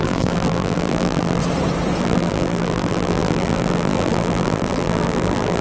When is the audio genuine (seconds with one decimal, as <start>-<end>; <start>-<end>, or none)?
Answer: 1.4-2.0